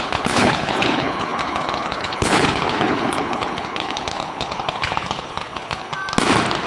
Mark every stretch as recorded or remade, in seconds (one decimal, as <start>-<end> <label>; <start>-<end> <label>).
0.0-5.9 remade; 5.9-6.7 recorded